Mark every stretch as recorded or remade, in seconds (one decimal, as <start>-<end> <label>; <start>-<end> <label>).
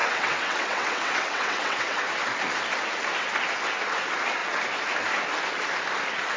0.0-2.0 remade; 2.0-6.4 recorded